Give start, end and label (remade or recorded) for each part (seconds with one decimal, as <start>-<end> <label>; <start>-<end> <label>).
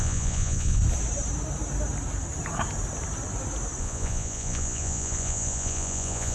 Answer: 0.0-0.8 remade; 0.8-3.8 recorded; 3.8-6.3 remade